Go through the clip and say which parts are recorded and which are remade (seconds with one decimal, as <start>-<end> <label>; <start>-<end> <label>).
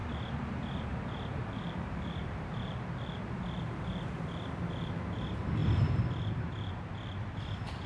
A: 0.0-7.9 remade